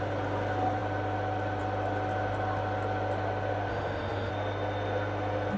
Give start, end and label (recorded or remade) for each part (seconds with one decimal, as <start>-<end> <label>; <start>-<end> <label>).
0.0-3.7 recorded; 3.7-4.3 remade; 4.3-5.6 recorded